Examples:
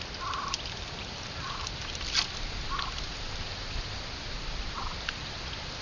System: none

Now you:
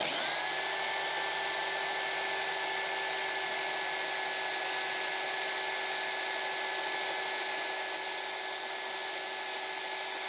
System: none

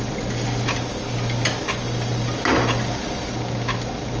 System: none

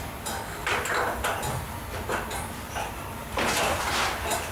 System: none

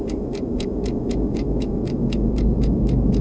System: autoencoder, DAC-VAE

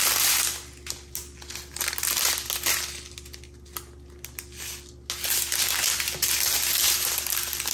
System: none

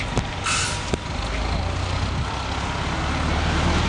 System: none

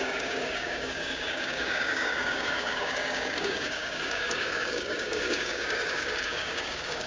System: codec, DAC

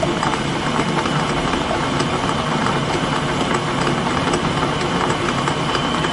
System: vocoder, BigVGAN v2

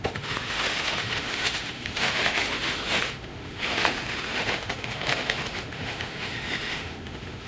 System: autoencoder, DAC-VAE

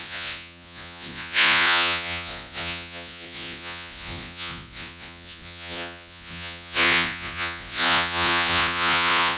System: vocoder, Vocos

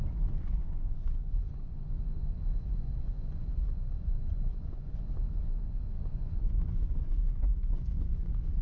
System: vocoder, Vocos